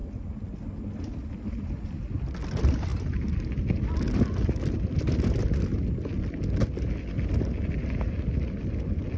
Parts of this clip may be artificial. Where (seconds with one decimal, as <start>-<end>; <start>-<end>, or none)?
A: none